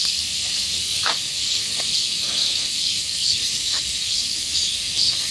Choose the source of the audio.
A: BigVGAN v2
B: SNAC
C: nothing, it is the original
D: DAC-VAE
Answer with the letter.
B